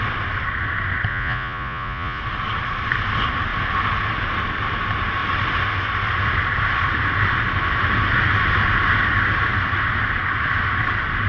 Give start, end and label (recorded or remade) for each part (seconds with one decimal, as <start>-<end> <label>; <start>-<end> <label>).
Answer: 0.0-1.1 recorded; 1.1-2.2 remade; 2.2-11.3 recorded